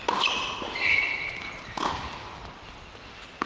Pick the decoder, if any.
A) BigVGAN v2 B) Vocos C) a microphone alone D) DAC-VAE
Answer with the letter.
C